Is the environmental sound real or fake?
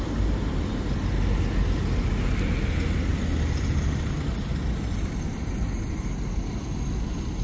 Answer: real